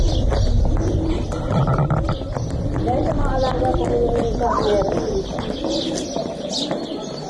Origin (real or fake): real